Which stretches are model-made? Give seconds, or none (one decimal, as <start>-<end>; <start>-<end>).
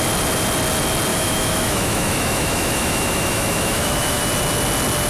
1.1-4.2